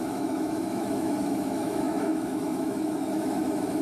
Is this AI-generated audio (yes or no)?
yes